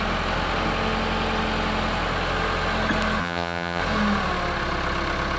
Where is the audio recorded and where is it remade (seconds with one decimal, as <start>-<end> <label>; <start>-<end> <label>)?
0.0-3.2 recorded; 3.2-3.8 remade; 3.8-5.4 recorded